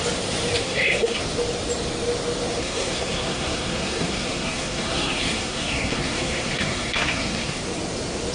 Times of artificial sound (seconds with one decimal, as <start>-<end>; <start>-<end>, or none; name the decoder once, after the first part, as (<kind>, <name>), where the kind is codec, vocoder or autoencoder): 0.6-1.2 (codec, SNAC); 2.6-7.6